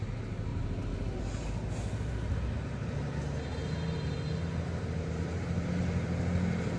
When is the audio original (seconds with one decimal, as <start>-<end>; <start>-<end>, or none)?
0.0-0.5; 1.2-6.8